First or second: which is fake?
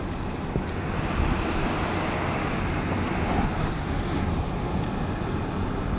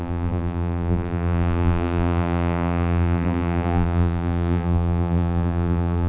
second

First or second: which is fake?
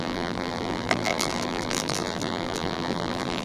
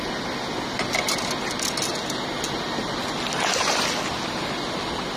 first